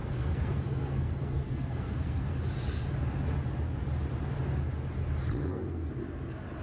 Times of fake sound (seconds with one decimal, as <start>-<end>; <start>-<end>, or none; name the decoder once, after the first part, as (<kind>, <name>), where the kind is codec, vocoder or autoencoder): 0.0-2.4 (codec, SNAC); 5.4-5.9